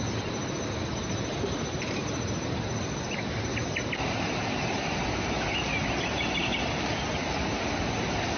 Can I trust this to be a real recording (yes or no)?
yes